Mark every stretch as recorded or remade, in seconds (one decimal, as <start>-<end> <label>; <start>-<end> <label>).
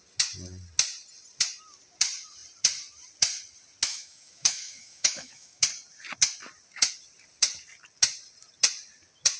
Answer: 0.0-3.9 recorded; 3.9-5.6 remade; 5.6-9.4 recorded